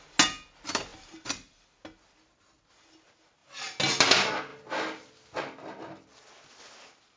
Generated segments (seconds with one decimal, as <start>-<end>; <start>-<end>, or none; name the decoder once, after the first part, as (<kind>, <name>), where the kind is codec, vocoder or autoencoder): none